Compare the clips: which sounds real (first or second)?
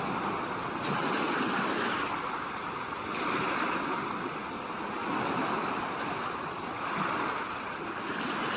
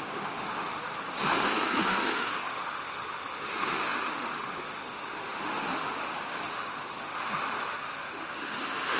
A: first